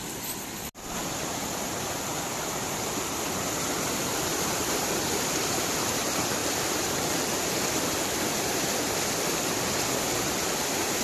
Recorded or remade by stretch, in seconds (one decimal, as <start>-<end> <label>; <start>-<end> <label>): 0.0-4.3 recorded; 4.3-5.0 remade; 5.0-6.4 recorded; 6.4-9.0 remade; 9.0-11.0 recorded